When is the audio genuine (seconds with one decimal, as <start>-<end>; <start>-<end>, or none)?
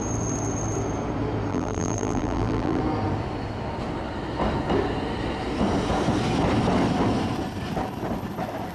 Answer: 0.0-1.5; 2.8-8.7